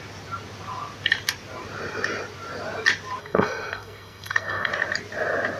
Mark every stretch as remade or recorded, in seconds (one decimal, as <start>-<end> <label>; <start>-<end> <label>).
0.0-3.2 recorded; 3.2-4.7 remade; 4.7-5.6 recorded